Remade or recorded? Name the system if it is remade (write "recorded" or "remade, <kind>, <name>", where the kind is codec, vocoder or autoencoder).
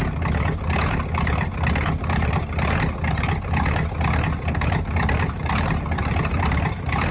recorded